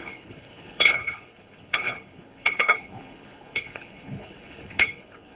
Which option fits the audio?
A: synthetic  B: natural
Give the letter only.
A